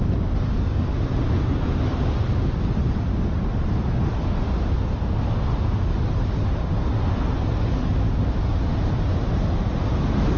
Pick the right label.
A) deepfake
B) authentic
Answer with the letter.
B